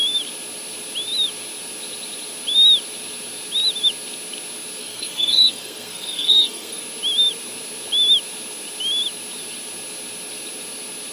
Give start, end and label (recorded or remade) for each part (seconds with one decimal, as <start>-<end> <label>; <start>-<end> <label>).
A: 0.0-4.8 recorded; 4.8-6.8 remade; 6.8-11.1 recorded